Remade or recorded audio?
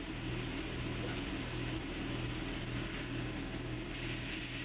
recorded